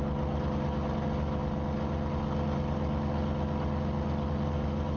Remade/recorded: recorded